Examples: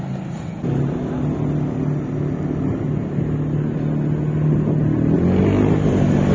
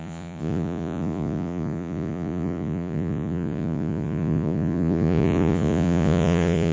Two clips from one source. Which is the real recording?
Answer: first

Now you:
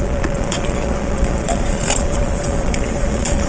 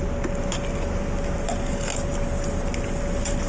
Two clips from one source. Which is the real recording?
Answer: second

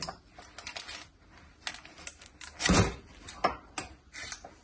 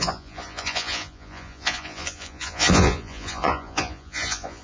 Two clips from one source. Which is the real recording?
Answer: first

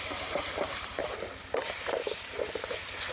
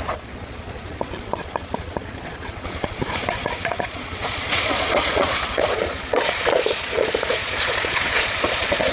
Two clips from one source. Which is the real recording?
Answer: first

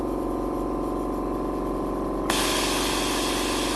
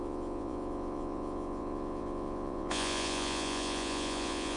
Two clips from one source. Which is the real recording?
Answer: first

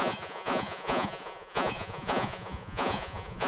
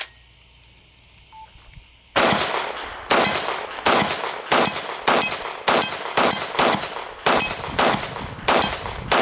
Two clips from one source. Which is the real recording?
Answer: second